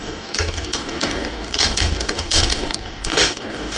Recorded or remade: remade